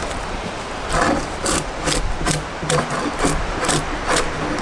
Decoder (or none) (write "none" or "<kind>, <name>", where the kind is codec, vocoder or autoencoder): none